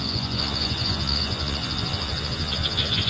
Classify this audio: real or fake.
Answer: fake